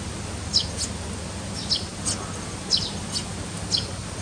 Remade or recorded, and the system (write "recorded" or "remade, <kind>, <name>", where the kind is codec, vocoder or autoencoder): recorded